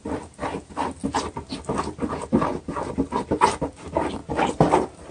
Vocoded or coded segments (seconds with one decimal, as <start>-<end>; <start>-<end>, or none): none